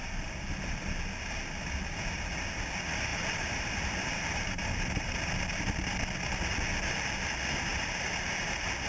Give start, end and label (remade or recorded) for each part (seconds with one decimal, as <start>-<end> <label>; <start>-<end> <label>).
0.0-3.1 recorded; 3.1-5.1 remade; 5.1-7.7 recorded; 7.7-8.3 remade; 8.3-8.9 recorded